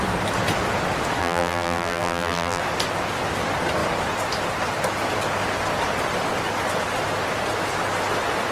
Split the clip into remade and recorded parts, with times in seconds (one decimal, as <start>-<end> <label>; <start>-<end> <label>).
0.0-1.2 recorded; 1.2-2.6 remade; 2.6-8.5 recorded